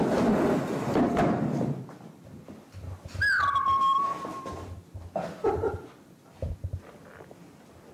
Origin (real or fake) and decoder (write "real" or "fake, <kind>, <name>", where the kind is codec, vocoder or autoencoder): real